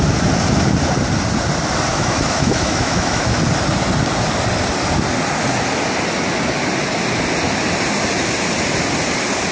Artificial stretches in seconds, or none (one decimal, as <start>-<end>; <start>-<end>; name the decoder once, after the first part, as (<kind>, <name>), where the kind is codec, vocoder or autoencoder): 1.9-3.4 (autoencoder, DAC-VAE)